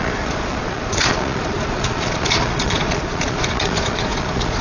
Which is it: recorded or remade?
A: remade